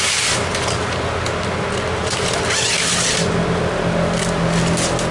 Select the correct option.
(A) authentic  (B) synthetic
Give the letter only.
A